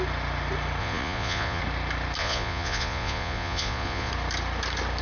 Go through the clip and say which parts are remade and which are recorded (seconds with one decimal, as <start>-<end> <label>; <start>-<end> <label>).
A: 0.0-0.8 recorded; 0.8-1.6 remade; 1.6-2.2 recorded; 2.2-4.1 remade; 4.1-5.0 recorded